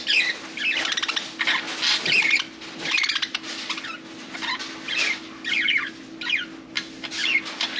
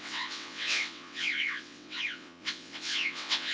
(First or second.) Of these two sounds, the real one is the first